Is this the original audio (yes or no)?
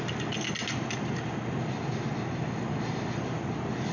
yes